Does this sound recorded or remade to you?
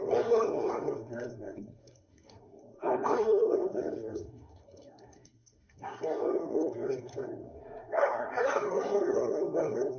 remade